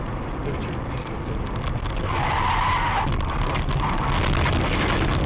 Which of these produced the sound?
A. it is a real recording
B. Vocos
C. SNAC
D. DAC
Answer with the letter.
A